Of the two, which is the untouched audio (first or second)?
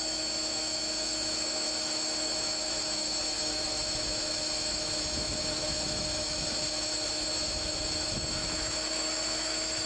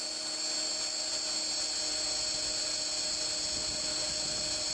second